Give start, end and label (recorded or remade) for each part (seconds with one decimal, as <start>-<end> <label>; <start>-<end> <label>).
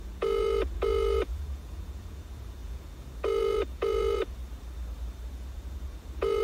0.0-4.4 remade; 4.4-5.3 recorded; 5.3-6.4 remade